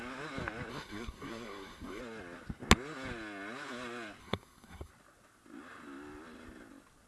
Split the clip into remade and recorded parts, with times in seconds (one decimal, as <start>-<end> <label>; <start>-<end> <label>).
0.0-0.7 recorded; 0.7-2.0 remade; 2.0-4.2 recorded; 4.2-4.9 remade; 4.9-7.1 recorded